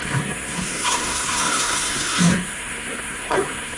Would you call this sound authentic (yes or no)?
no